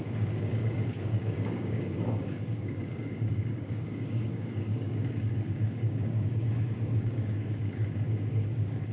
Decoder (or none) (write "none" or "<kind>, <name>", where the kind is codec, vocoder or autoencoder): codec, DAC